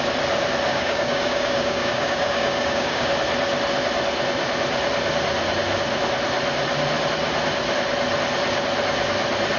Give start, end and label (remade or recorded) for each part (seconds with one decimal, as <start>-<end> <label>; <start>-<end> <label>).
0.0-0.7 recorded; 0.7-3.1 remade; 3.1-9.6 recorded